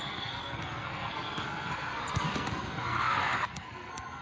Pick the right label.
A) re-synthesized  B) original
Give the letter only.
A